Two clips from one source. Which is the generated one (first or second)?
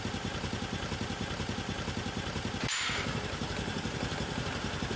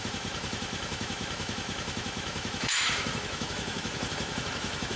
second